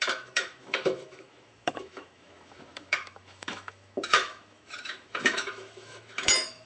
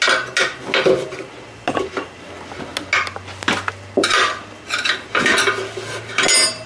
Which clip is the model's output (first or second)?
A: first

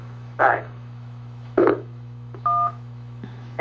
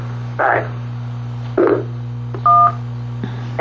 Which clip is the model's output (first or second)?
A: first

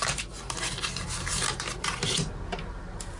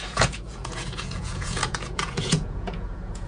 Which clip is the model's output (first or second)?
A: second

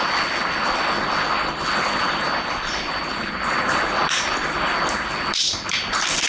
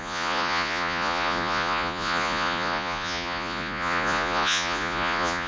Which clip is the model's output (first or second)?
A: second